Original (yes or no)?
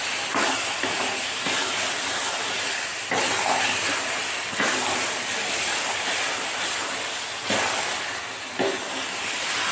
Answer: yes